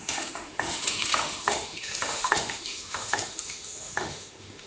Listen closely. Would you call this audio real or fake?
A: fake